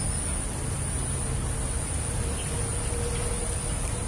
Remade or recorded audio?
recorded